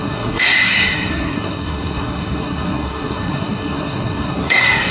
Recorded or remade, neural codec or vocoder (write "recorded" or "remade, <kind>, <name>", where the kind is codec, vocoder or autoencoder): remade, codec, SNAC